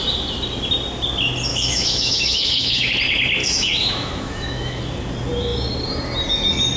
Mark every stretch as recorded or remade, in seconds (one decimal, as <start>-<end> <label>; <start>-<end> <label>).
0.0-1.5 recorded; 1.5-2.9 remade; 2.9-3.4 recorded; 3.4-4.8 remade; 4.8-6.8 recorded